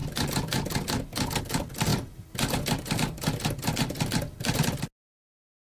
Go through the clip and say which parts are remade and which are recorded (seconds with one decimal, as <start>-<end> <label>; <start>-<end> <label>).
0.0-1.4 recorded; 1.4-1.9 remade; 1.9-5.8 recorded